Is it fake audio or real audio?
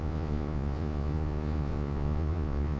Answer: fake